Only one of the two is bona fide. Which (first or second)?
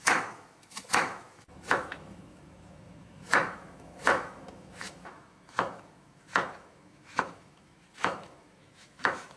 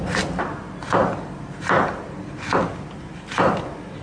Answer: second